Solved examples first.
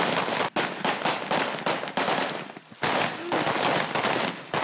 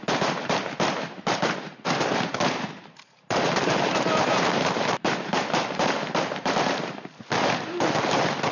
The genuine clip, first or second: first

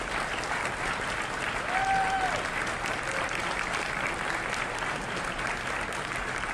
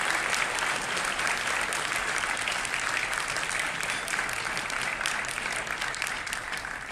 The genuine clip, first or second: first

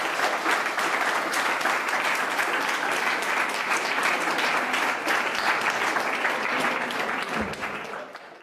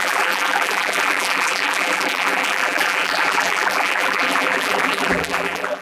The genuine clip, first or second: first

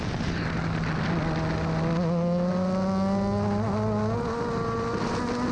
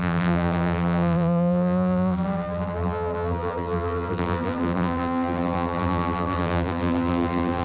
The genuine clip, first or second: first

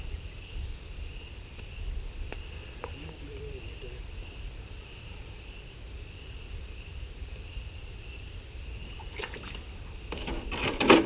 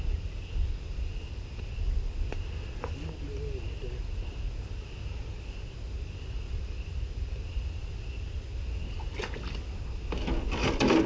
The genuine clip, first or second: second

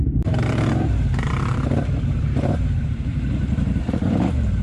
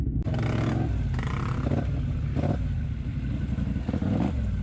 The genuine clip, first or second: second